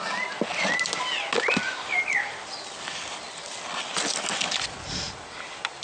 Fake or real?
real